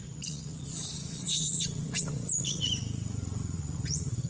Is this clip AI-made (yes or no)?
yes